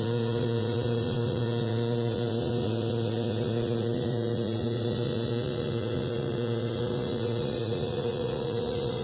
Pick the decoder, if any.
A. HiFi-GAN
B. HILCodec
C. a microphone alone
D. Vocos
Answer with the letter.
D